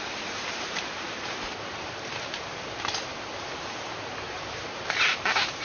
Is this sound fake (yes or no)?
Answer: yes